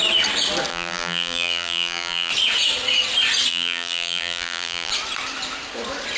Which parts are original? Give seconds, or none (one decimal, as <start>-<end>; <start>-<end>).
0.0-0.7; 2.3-3.5; 4.9-6.2